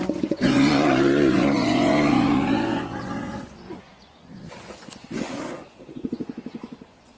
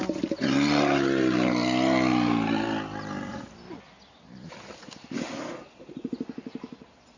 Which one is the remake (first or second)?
first